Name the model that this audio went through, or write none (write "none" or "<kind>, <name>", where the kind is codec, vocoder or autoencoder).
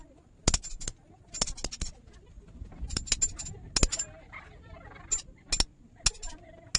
none